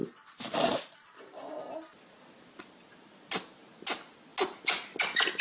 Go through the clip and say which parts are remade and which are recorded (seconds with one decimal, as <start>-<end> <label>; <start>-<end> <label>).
0.0-5.4 recorded